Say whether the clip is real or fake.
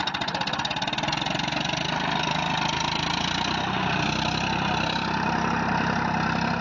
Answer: real